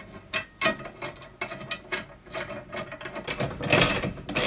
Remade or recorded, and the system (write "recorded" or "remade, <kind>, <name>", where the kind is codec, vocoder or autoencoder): recorded